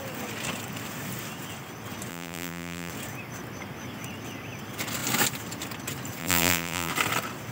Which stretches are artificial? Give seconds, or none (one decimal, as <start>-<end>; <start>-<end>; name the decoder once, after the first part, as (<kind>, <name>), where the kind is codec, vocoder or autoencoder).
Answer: 2.1-2.9 (vocoder, BigVGAN v2); 6.2-6.9